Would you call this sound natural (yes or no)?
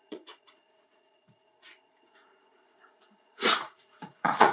no